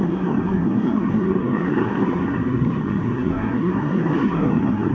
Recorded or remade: remade